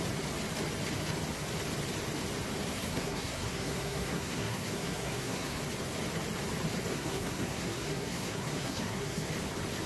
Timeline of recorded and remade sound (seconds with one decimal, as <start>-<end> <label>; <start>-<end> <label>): 0.0-2.7 recorded; 2.7-5.6 remade; 5.6-6.9 recorded; 6.9-9.3 remade; 9.3-9.9 recorded